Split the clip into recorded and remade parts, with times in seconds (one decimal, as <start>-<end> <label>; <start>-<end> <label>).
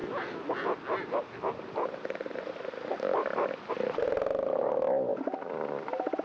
0.0-6.2 recorded